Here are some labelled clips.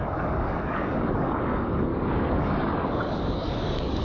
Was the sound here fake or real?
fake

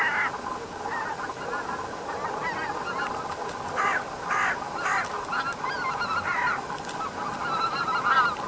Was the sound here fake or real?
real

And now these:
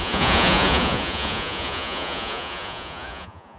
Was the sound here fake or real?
fake